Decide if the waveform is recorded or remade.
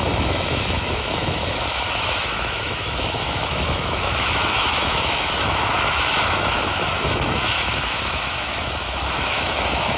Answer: remade